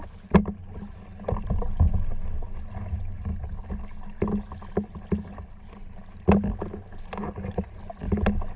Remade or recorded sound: recorded